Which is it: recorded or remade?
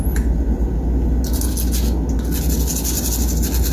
recorded